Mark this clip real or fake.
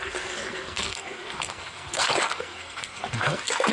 fake